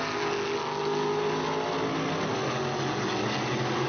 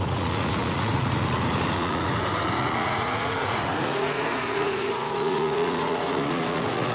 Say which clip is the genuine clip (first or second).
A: first